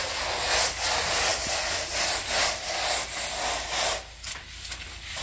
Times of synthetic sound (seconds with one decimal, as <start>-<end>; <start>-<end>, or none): none